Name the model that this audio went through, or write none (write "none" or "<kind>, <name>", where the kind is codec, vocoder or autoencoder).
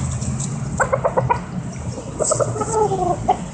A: none